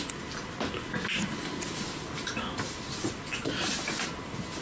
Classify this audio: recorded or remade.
recorded